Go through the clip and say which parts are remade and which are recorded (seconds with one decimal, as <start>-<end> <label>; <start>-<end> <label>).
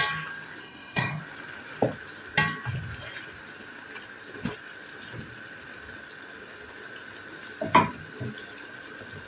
0.0-0.6 recorded; 0.6-1.2 remade; 1.2-9.3 recorded